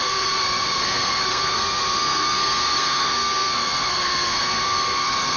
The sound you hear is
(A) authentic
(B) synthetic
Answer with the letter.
B